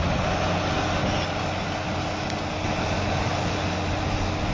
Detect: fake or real real